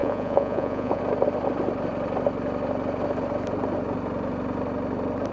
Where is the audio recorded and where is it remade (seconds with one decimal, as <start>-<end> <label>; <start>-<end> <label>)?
0.0-1.0 remade; 1.0-5.3 recorded